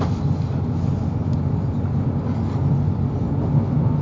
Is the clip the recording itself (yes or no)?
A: yes